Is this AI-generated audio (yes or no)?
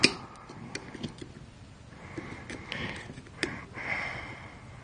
no